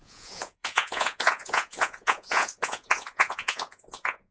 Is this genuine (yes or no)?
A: no